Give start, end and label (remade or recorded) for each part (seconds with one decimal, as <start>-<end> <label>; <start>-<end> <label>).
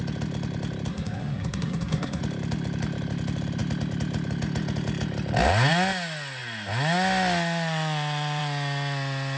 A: 0.0-0.9 recorded; 0.9-2.2 remade; 2.2-9.4 recorded